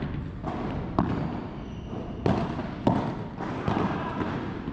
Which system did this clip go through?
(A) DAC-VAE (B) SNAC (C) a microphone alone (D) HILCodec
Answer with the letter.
C